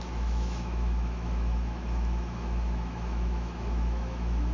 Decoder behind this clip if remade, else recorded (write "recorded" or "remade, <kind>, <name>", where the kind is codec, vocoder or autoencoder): remade, autoencoder, DAC-VAE